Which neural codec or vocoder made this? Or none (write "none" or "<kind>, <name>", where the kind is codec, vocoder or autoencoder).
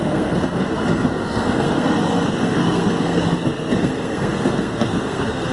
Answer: codec, SNAC